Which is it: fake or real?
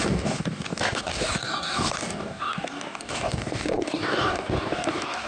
fake